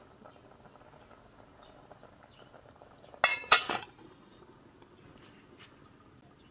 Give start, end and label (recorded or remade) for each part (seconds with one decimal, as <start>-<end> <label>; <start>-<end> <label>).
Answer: 0.0-3.3 recorded; 3.3-4.4 remade; 4.4-6.5 recorded